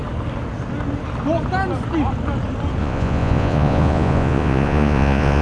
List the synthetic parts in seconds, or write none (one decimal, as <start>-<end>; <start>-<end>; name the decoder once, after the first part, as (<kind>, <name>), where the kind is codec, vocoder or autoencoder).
2.8-5.4 (vocoder, Vocos)

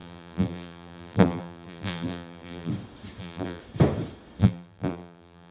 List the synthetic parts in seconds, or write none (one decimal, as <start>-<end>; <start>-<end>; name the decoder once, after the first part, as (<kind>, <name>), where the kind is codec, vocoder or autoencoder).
0.0-2.7 (vocoder, BigVGAN v2); 3.2-3.6; 4.4-5.5

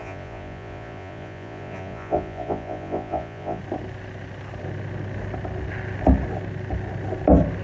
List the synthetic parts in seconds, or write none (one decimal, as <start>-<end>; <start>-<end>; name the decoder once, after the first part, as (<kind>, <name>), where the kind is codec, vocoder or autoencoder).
0.0-3.6 (vocoder, Vocos)

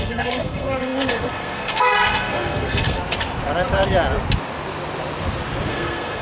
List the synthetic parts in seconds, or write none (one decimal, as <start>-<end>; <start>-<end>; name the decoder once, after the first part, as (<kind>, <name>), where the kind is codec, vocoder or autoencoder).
0.0-3.0 (codec, SNAC); 5.7-6.2

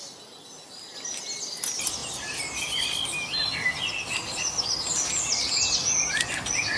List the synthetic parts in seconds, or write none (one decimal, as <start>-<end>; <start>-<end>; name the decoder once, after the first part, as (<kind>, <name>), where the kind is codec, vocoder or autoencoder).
none

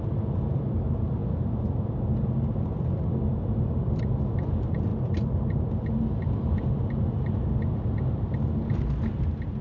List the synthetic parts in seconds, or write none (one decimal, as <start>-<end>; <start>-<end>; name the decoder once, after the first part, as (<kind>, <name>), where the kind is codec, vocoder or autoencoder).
none